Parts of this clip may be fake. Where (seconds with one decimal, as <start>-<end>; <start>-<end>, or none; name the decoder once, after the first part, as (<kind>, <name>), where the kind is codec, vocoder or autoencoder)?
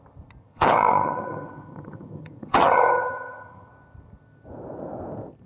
0.4-3.7 (vocoder, HiFi-GAN)